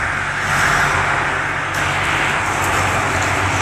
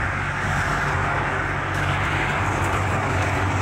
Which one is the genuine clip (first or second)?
first